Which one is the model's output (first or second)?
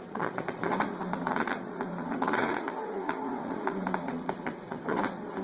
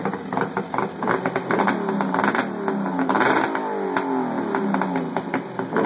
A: first